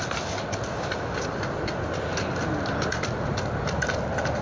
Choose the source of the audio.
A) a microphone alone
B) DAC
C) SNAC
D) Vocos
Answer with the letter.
A